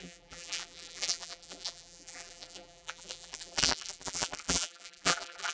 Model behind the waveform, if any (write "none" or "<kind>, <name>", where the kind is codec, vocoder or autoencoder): vocoder, BigVGAN v2